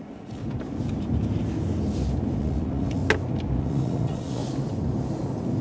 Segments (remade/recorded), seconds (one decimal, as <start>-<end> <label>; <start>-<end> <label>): 0.0-0.4 remade; 0.4-2.4 recorded; 2.4-3.0 remade; 3.0-3.6 recorded; 3.6-4.4 remade; 4.4-5.6 recorded